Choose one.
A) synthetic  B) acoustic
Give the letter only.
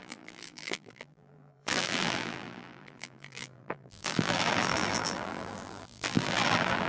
A